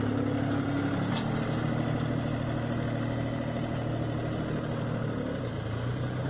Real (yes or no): yes